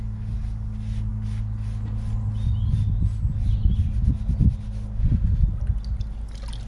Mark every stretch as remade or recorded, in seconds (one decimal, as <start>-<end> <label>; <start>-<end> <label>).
0.0-6.7 recorded